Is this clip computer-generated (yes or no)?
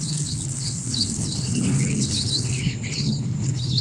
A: yes